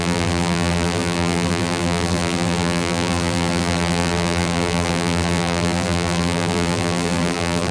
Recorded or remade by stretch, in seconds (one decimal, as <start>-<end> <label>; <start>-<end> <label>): 0.0-7.7 remade